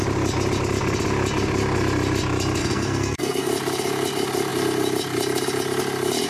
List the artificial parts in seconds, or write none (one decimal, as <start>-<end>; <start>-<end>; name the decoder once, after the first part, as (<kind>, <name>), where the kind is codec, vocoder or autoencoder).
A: 2.6-3.5 (codec, SNAC)